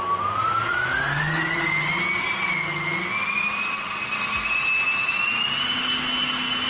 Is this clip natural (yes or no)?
yes